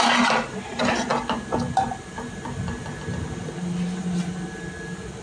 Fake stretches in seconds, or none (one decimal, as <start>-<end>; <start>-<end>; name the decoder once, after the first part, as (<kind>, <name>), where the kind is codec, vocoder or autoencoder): none

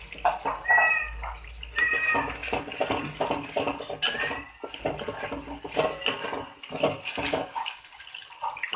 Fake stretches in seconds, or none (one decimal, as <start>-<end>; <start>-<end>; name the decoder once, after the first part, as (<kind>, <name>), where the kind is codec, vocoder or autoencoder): 7.3-8.0 (codec, DAC)

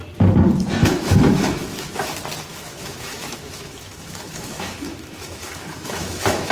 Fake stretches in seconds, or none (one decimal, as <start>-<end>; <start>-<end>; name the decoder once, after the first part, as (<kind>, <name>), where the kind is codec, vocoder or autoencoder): 0.8-2.1 (autoencoder, DAC-VAE); 2.5-6.5

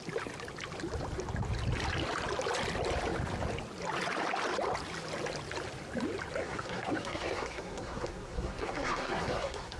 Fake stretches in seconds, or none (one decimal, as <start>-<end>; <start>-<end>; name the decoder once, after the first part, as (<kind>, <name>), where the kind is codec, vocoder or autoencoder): 6.4-9.8 (codec, SNAC)

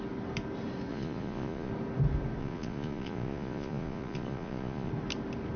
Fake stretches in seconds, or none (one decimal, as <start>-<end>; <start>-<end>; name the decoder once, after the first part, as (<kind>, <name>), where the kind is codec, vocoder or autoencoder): 0.9-1.7 (vocoder, Vocos); 2.4-4.9

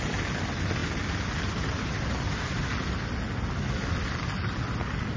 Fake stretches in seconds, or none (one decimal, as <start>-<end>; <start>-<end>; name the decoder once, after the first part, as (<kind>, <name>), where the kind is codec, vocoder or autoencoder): none

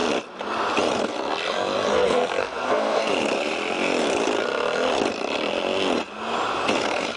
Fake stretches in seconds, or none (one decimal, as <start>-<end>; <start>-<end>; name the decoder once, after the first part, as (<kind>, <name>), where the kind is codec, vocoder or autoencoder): 1.9-3.1 (codec, SNAC)